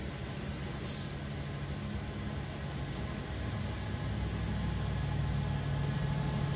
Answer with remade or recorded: recorded